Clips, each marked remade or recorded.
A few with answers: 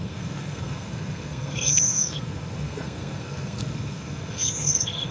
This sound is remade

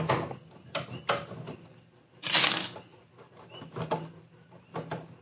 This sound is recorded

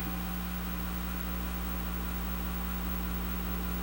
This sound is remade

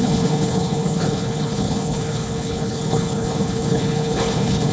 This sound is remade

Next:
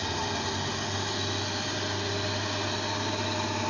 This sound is recorded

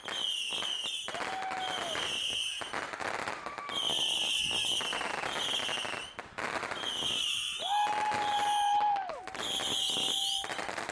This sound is recorded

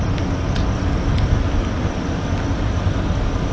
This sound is recorded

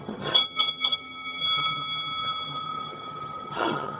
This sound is remade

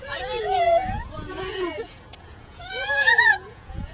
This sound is remade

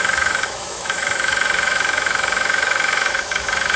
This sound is remade